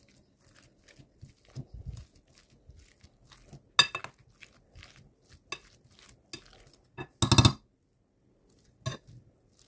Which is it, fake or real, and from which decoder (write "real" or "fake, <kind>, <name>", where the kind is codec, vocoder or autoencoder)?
real